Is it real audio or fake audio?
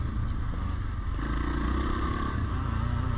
real